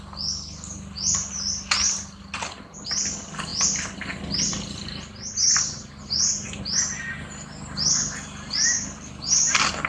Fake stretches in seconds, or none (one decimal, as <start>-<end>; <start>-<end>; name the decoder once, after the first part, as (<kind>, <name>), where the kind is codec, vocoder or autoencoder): none